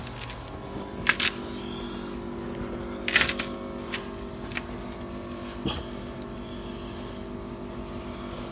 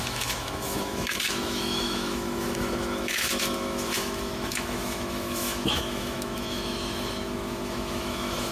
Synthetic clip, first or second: second